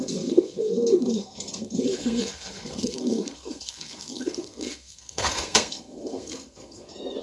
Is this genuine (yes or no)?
no